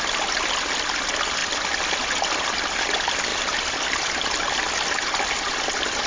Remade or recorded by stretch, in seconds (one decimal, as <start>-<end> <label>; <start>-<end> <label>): 0.0-6.1 recorded